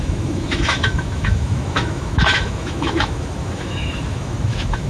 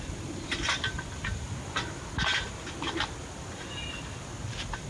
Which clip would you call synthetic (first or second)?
first